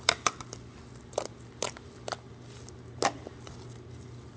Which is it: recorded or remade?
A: recorded